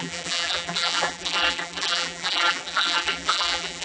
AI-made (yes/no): yes